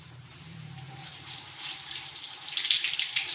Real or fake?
fake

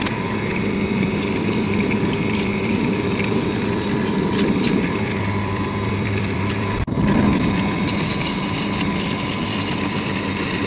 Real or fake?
fake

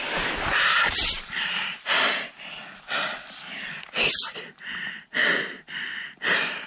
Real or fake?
fake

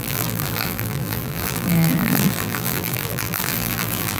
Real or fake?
fake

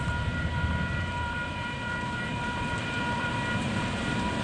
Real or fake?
fake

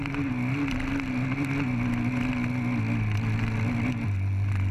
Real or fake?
real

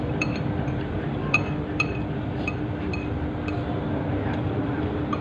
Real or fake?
fake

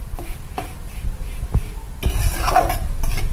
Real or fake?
real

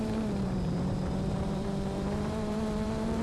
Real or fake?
fake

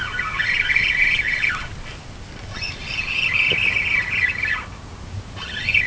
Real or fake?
real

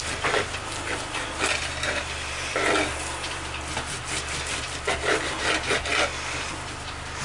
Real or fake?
real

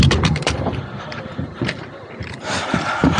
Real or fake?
fake